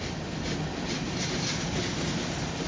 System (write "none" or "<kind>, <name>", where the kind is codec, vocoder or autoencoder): none